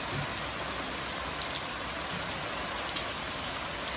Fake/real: real